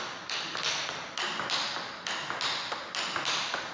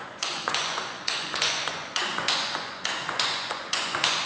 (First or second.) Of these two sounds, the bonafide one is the first